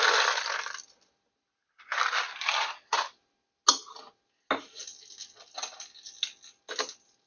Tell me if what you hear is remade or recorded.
recorded